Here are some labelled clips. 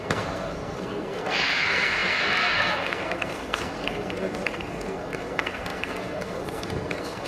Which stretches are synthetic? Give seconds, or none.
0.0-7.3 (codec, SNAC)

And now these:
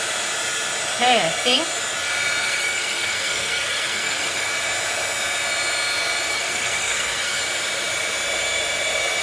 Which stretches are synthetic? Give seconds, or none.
2.4-4.5 (codec, SNAC); 6.3-7.4

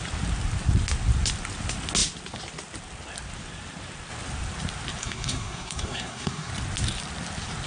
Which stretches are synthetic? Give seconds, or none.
5.0-6.5 (codec, SNAC)